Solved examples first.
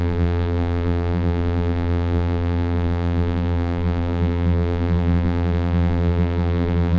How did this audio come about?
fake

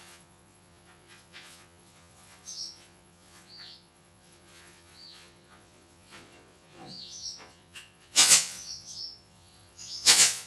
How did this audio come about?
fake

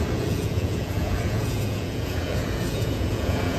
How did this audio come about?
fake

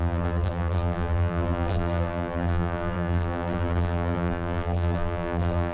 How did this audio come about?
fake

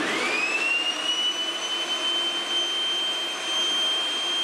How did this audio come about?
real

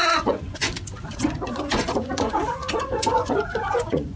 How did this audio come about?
fake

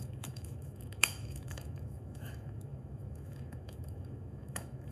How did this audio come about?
fake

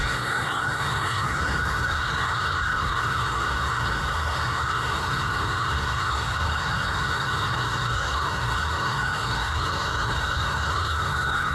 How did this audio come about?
fake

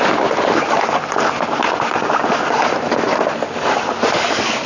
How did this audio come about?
real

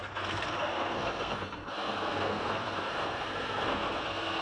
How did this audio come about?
fake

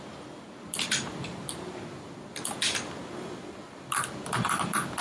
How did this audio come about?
real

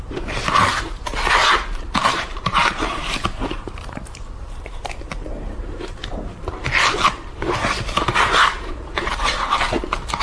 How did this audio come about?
fake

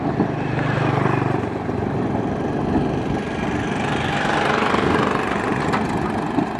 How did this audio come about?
real